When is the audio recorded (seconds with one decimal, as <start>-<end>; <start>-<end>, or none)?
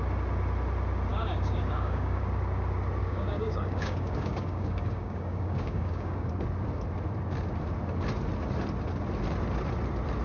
0.0-1.1; 2.2-3.0; 6.3-10.2